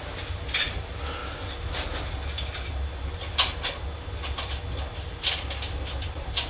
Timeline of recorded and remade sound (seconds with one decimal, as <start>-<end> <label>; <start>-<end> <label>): 0.0-1.2 remade; 1.2-5.1 recorded; 5.1-6.5 remade